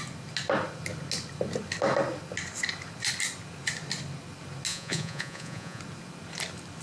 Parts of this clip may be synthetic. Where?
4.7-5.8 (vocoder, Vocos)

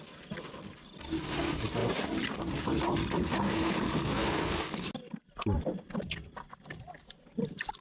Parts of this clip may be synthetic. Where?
none

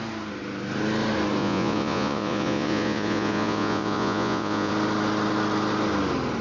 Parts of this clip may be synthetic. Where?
1.4-4.7 (vocoder, Vocos)

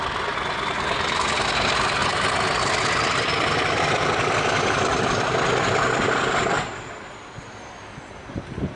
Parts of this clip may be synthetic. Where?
none

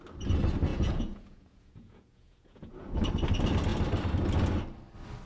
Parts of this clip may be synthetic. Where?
0.7-3.1 (vocoder, Vocos)

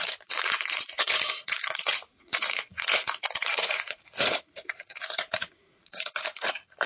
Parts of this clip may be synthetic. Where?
0.0-6.9 (vocoder, Vocos)

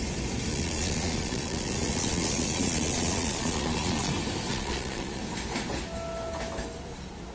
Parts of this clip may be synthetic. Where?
0.5-4.1 (vocoder, Vocos); 4.5-5.2